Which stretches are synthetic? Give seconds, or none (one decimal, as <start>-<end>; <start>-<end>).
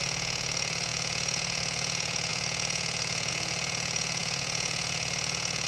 0.0-5.7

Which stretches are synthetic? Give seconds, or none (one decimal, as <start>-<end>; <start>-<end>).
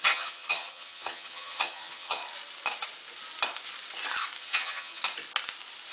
0.0-2.2; 4.4-5.0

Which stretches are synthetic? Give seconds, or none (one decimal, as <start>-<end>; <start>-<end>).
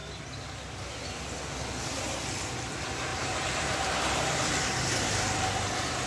3.1-5.5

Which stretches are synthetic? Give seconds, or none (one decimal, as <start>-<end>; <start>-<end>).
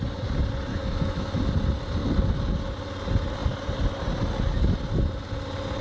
0.7-1.4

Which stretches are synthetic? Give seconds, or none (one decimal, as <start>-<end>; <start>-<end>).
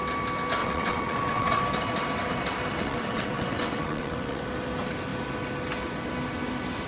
0.6-1.6; 2.8-4.4